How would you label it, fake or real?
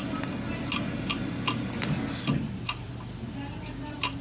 real